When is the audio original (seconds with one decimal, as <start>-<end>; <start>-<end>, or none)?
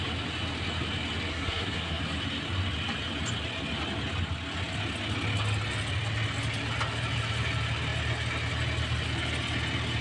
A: 0.0-1.3; 2.0-10.0